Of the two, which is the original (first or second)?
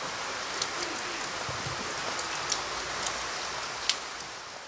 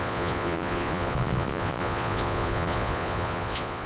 first